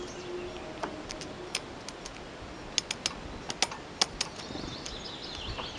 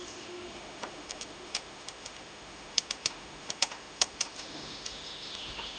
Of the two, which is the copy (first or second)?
second